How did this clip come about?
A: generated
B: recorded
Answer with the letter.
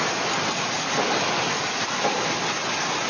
B